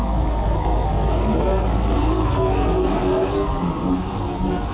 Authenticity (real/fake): fake